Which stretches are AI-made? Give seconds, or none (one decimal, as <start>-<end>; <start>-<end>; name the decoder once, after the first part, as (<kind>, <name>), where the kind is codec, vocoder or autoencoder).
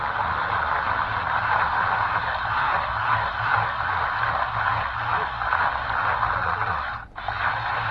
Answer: none